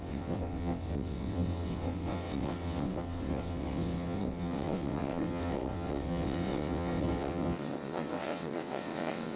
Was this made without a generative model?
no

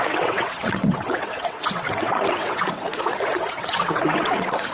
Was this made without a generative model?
no